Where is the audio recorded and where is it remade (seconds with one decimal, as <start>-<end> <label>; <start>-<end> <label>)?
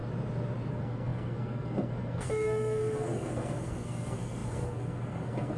0.0-0.7 recorded; 0.7-5.6 remade